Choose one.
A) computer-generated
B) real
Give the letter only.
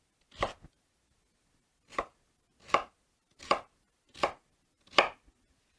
B